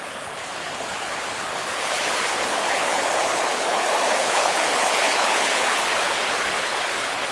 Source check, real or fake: fake